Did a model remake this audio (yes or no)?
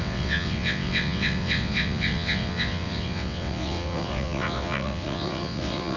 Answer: yes